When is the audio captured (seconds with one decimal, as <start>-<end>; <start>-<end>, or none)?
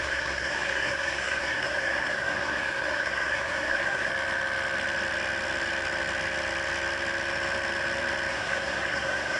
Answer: 4.1-8.3